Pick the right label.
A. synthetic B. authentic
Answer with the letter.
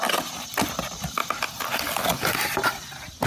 B